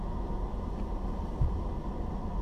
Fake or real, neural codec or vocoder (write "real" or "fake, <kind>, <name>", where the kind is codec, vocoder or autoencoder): real